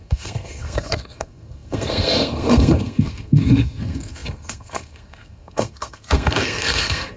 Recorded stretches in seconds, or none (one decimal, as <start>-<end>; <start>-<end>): none